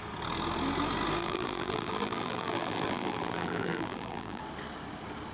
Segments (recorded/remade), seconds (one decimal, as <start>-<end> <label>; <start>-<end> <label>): 0.0-1.2 recorded; 1.2-4.4 remade; 4.4-5.3 recorded